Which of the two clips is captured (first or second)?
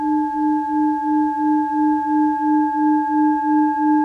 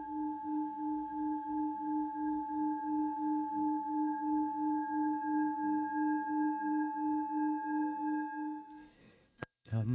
first